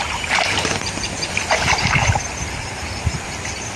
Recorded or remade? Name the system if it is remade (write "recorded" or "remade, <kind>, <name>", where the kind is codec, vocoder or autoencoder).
remade, vocoder, BigVGAN v2